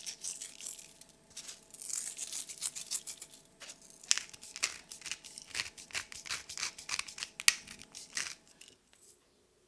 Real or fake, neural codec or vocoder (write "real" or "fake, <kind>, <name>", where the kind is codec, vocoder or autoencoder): real